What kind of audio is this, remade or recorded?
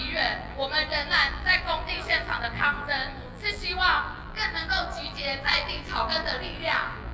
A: remade